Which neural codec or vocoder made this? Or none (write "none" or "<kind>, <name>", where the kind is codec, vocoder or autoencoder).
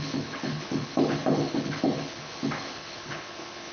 codec, HILCodec